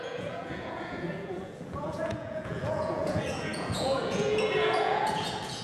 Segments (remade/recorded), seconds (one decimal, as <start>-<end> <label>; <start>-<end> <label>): 0.0-5.6 remade